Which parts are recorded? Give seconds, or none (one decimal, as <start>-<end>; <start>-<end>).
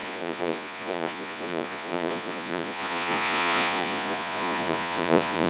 none